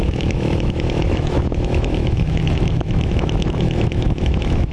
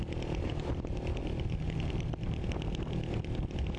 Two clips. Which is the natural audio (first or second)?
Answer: second